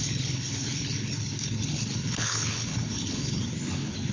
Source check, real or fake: fake